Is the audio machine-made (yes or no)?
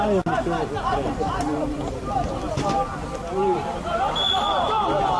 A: no